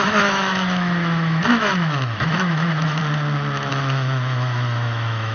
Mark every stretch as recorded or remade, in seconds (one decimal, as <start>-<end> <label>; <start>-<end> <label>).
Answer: 0.0-3.0 remade; 3.0-3.7 recorded; 3.7-5.3 remade

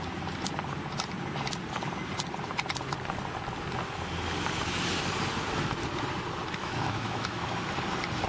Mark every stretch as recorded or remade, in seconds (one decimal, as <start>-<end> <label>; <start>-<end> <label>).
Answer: 0.0-6.6 recorded; 6.6-7.4 remade; 7.4-8.3 recorded